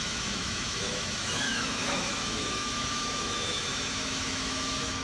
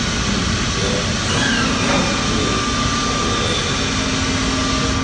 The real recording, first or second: second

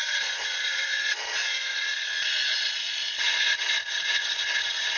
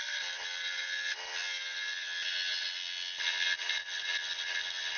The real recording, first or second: second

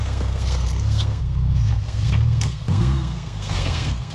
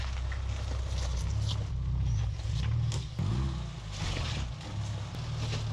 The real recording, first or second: second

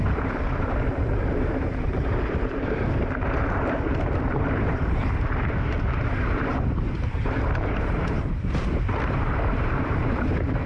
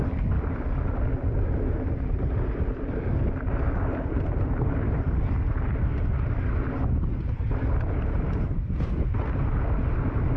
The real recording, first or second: second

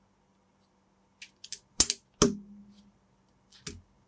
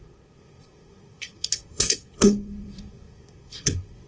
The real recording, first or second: first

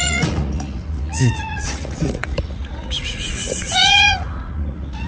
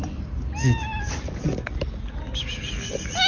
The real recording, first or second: second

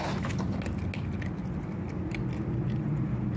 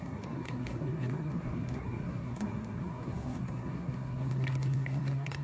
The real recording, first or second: first